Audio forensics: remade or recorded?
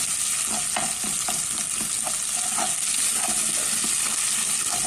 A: recorded